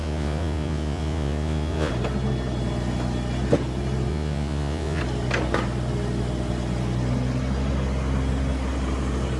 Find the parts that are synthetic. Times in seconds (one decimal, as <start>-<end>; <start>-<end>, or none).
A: 0.0-1.9; 4.1-5.0